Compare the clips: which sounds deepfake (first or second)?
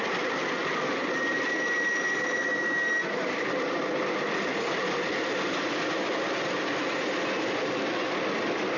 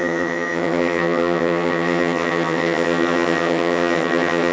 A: second